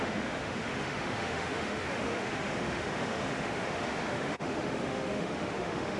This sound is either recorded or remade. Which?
remade